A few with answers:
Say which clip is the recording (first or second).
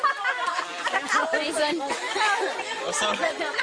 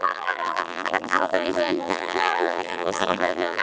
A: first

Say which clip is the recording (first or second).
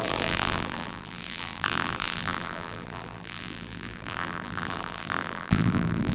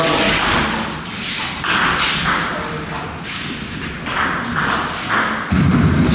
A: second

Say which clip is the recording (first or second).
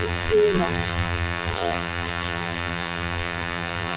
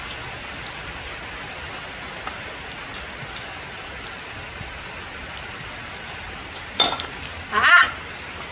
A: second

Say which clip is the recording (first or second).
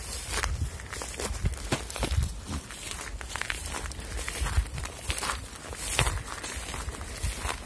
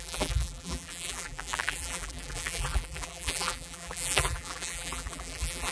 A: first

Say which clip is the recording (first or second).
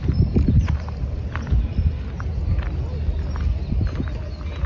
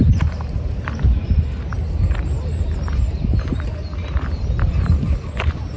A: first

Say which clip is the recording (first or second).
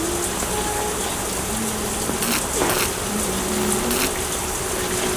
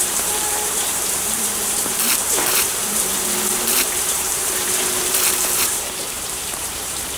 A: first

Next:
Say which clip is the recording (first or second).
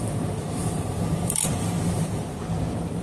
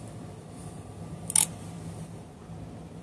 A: second